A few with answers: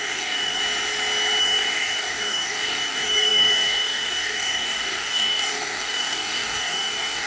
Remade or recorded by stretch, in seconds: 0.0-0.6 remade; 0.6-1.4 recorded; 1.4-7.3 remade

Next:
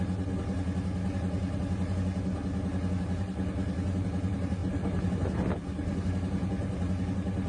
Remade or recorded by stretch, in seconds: 0.0-7.5 recorded

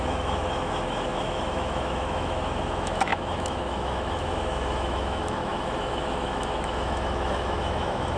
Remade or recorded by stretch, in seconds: 0.0-8.2 remade

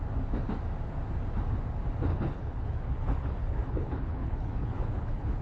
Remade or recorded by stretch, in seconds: 0.0-2.1 recorded; 2.1-5.4 remade

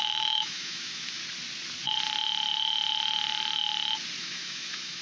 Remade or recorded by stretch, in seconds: 0.0-1.2 remade; 1.2-4.2 recorded; 4.2-5.0 remade

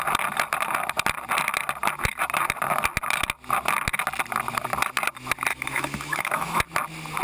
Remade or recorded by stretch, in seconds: 0.0-5.5 recorded; 5.5-6.6 remade; 6.6-7.2 recorded

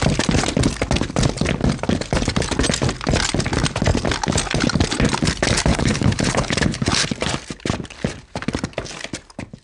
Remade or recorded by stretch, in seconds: 0.0-5.7 recorded; 5.7-6.9 remade; 6.9-9.6 recorded